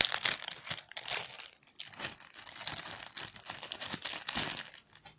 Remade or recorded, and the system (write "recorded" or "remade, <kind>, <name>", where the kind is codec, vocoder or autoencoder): recorded